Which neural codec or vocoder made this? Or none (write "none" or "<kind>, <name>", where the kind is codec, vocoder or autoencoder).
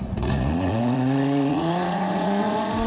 vocoder, Vocos